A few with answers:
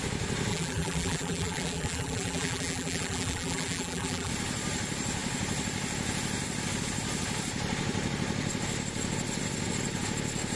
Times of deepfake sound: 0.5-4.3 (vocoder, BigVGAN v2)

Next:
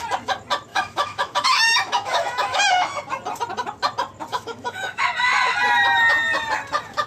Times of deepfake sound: 0.7-3.0 (autoencoder, DAC-VAE); 4.3-5.0